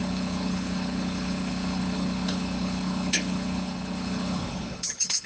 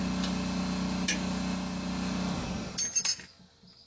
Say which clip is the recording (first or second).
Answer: second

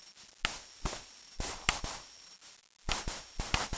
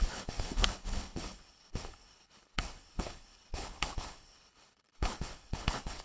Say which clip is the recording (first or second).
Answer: first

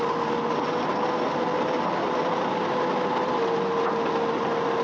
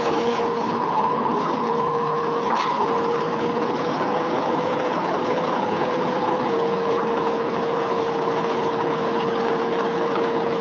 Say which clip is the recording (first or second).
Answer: first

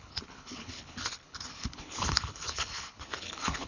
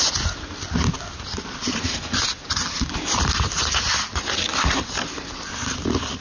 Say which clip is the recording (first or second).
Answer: second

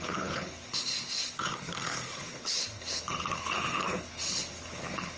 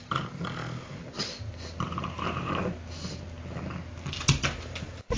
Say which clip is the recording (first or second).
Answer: second